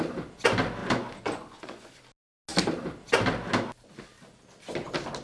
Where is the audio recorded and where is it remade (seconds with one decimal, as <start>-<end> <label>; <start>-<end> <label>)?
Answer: 0.0-0.8 recorded; 0.8-2.0 remade; 2.0-5.2 recorded